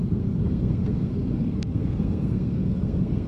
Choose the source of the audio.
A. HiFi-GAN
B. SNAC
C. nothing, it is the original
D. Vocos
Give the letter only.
B